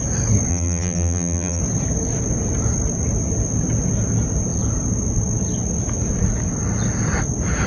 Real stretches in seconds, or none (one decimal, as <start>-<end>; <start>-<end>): 0.0-0.5; 1.6-7.7